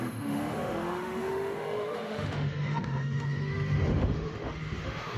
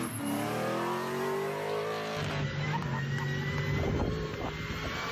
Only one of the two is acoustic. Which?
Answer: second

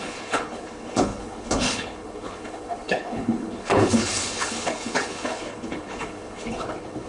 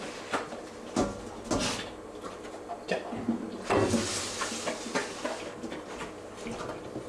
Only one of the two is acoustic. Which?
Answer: second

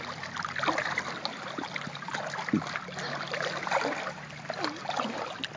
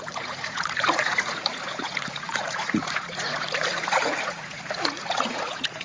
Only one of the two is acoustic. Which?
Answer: first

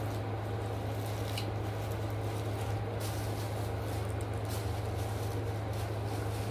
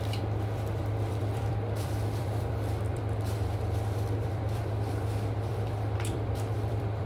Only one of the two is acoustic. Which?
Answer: first